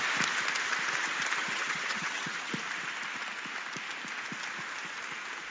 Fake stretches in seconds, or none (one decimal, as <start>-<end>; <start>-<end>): 1.4-2.5